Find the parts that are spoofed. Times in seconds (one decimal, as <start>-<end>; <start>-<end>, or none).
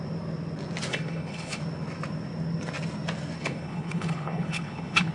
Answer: 0.9-1.6; 3.4-5.1